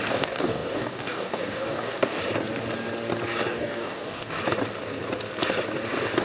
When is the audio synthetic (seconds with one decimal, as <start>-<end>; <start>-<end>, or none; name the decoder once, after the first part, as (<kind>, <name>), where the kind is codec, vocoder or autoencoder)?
0.0-2.2 (codec, DAC); 3.5-4.4